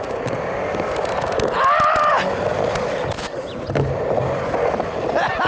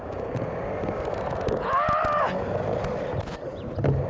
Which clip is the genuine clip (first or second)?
second